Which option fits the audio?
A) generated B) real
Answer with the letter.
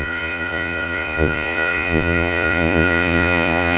A